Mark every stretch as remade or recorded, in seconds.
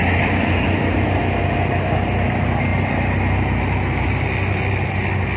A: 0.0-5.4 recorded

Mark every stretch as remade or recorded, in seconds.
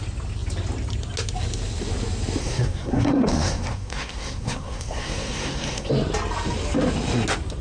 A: 0.0-2.4 recorded; 2.4-5.9 remade; 5.9-7.6 recorded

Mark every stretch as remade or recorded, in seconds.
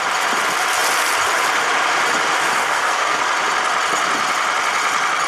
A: 0.0-2.6 recorded; 2.6-3.2 remade; 3.2-5.3 recorded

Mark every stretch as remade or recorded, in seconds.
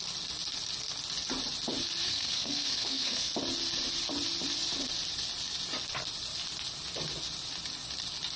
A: 0.0-2.1 recorded; 2.1-3.3 remade; 3.3-8.4 recorded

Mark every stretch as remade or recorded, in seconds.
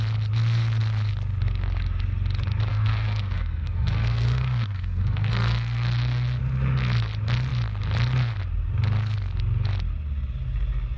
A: 0.0-2.7 recorded; 2.7-6.4 remade; 6.4-11.0 recorded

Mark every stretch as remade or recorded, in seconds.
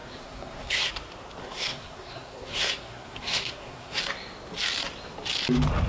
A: 0.0-0.9 remade; 0.9-1.4 recorded; 1.4-4.0 remade; 4.0-5.9 recorded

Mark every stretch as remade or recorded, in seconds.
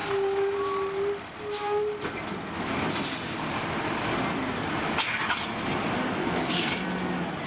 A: 0.0-6.2 recorded; 6.2-6.7 remade; 6.7-7.5 recorded